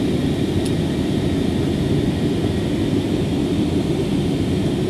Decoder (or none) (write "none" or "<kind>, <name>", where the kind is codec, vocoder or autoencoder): none